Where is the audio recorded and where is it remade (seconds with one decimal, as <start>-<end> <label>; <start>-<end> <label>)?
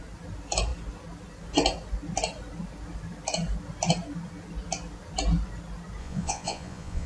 0.0-6.0 recorded; 6.0-7.1 remade